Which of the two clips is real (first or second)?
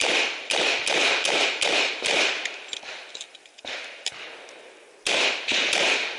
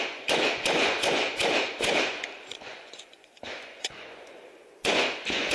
first